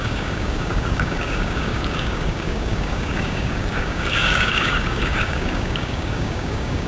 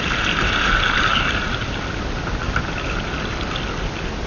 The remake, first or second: first